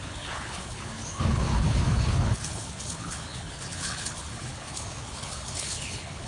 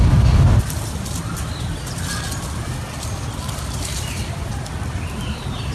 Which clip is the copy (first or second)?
first